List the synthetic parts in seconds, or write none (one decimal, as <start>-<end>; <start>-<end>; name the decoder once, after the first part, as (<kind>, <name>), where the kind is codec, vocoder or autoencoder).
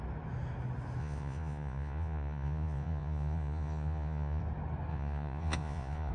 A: 1.0-4.4 (vocoder, Vocos); 4.9-6.1